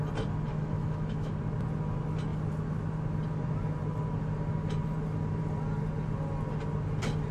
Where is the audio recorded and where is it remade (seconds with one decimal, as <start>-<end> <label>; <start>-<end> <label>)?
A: 0.0-0.5 recorded; 0.5-1.3 remade; 1.3-7.3 recorded